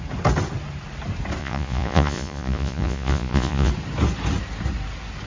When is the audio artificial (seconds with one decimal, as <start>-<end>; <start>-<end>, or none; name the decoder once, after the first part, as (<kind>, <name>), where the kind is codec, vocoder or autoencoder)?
1.4-3.7 (vocoder, Vocos)